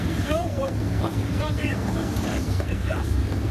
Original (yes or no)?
no